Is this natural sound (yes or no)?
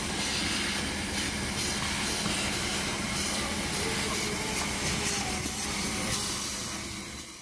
yes